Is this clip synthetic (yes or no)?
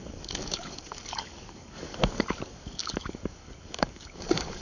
yes